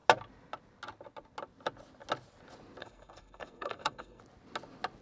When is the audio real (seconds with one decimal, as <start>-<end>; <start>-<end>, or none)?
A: 0.0-2.8; 4.2-5.0